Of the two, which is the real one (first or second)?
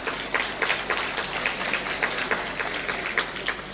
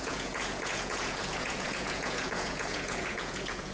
first